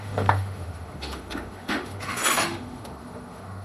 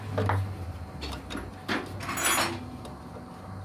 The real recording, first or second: second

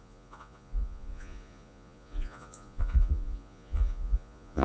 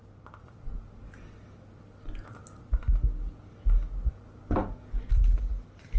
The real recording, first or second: second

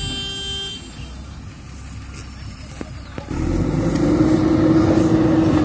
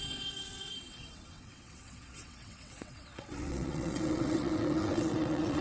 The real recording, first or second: first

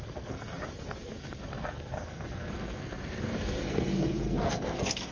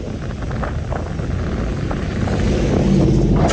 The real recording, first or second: second